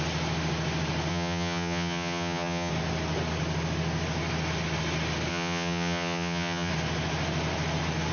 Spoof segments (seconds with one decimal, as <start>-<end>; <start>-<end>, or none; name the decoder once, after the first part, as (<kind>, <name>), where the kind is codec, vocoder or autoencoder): 1.1-2.7 (vocoder, HiFi-GAN); 5.3-6.7